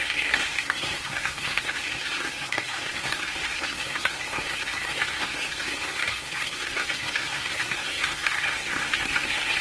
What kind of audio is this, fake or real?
fake